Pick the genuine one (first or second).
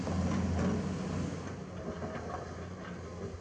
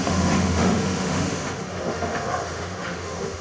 first